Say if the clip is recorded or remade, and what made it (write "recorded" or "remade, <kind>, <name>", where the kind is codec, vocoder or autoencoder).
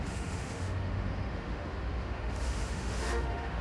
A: remade, autoencoder, DAC-VAE